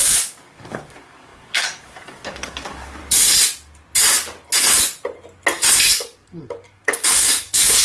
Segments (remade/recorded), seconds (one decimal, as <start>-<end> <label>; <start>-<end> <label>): 0.0-3.0 remade; 3.0-5.9 recorded; 5.9-7.8 remade